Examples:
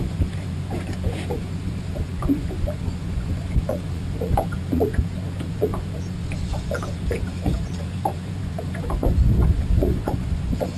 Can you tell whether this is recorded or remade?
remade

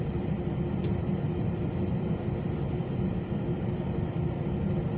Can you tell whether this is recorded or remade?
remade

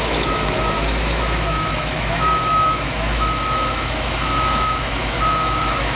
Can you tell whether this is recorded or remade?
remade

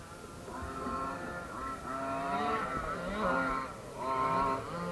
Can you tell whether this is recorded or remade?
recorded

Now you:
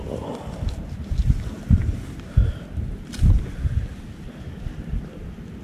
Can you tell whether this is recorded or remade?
recorded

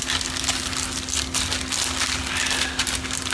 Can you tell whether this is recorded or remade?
recorded